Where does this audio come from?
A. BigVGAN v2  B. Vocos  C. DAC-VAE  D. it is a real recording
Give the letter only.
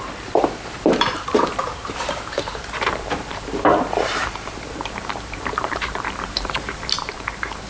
A